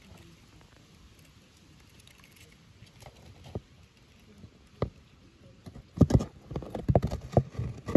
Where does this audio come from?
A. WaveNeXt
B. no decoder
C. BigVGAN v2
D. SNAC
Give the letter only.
B